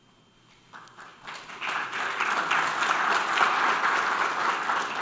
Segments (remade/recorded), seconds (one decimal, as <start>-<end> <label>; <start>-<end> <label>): 0.0-5.0 recorded